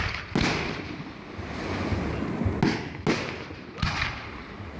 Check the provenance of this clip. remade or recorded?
recorded